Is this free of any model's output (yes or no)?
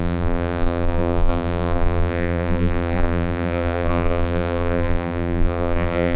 no